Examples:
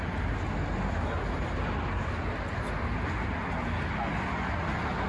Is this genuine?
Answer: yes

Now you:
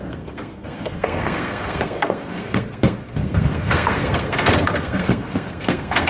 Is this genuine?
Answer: no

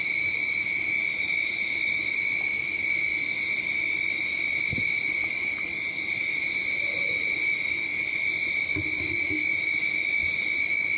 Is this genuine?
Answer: yes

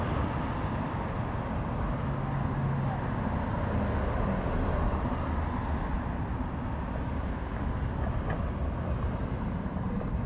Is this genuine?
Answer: yes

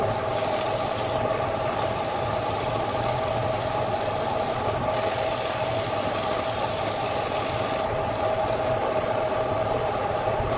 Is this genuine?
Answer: yes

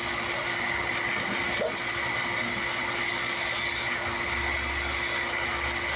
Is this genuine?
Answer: yes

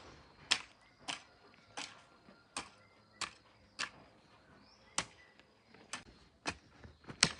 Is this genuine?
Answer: yes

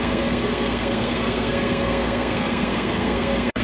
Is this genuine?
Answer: no